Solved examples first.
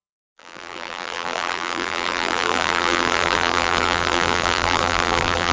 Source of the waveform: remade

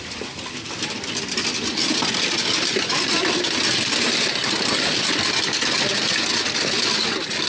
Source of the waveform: recorded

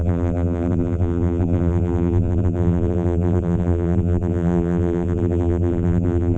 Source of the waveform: remade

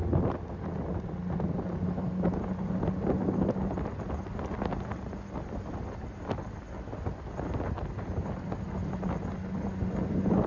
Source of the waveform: recorded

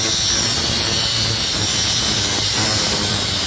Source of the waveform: remade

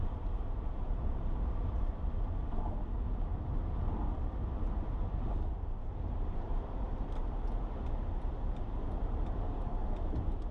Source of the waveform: remade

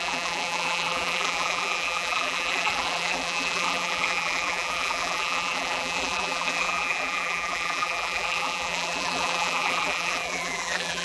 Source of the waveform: remade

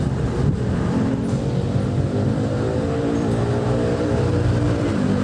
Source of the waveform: remade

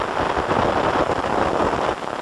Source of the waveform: recorded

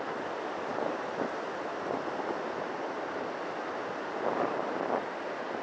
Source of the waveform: recorded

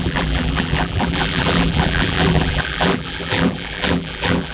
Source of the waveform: remade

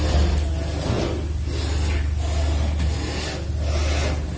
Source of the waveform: recorded